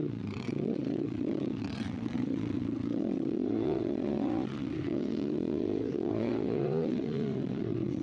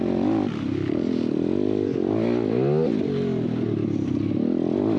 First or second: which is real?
second